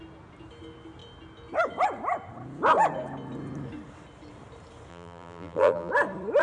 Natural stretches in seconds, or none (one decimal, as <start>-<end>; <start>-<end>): 0.0-4.9; 5.9-6.4